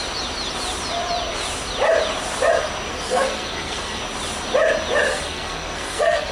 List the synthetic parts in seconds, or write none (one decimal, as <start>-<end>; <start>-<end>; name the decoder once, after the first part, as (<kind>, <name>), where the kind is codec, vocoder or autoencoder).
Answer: 2.9-4.0 (codec, SNAC); 5.1-6.3